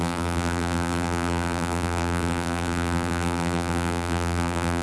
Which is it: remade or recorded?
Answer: remade